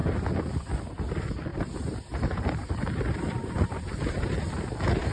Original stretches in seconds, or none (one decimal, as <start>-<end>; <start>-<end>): 0.0-1.5; 4.6-5.1